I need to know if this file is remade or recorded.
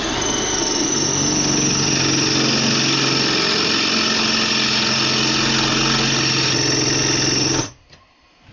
recorded